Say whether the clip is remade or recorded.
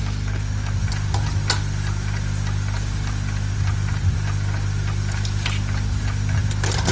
recorded